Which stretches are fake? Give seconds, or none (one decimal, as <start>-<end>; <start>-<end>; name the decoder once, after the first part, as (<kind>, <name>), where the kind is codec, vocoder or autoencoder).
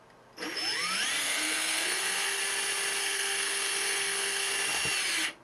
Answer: 1.2-2.4 (codec, SNAC); 3.0-4.5